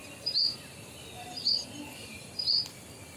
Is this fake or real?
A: fake